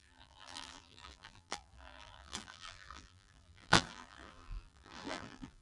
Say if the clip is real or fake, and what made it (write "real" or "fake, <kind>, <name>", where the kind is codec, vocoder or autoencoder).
fake, vocoder, BigVGAN v2